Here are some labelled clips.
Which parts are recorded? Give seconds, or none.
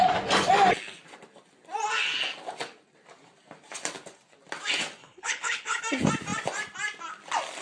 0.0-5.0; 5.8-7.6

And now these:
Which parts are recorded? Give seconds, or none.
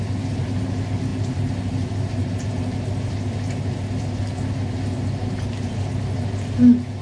0.0-7.0